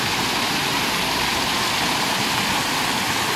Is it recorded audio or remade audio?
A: recorded